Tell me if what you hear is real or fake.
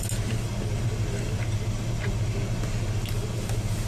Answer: real